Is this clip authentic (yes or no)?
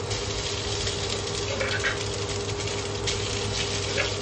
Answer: yes